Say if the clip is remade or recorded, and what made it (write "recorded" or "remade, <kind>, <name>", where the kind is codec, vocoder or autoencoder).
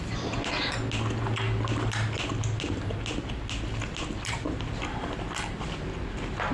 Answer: recorded